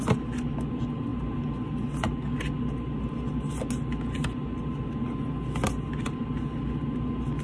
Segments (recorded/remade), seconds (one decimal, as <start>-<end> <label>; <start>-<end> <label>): 0.0-7.4 recorded